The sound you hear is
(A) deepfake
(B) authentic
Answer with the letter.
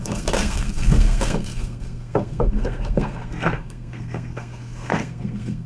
A